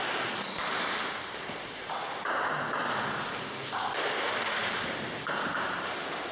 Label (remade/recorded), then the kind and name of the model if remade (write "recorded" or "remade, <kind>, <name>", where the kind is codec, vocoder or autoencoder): recorded